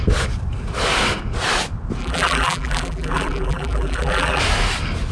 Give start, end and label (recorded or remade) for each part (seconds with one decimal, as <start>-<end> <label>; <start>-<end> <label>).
0.0-2.0 recorded; 2.0-4.4 remade; 4.4-5.1 recorded